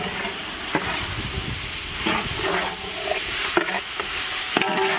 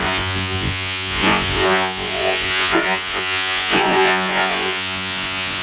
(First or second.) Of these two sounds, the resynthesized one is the second